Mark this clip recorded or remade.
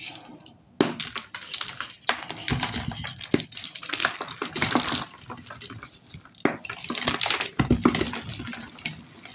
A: recorded